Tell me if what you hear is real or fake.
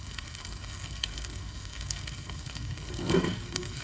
fake